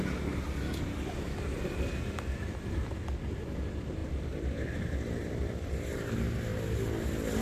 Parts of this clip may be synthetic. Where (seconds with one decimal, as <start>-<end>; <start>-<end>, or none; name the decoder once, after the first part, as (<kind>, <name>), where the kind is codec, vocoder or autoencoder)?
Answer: none